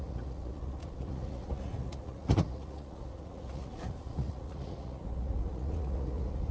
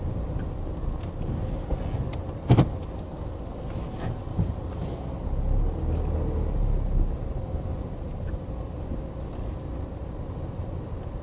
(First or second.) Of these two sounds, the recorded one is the second